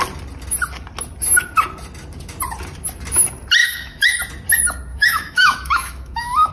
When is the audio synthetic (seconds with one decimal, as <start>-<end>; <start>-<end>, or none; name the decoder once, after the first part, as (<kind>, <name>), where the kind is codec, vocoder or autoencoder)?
3.6-4.2 (autoencoder, DAC-VAE); 4.9-6.5